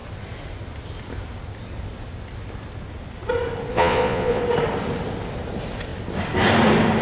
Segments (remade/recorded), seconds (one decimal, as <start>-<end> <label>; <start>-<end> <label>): 0.0-3.7 recorded; 3.7-4.4 remade; 4.4-7.0 recorded